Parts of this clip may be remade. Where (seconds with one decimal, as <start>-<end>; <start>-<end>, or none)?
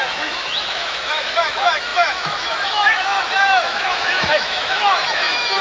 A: 0.0-5.6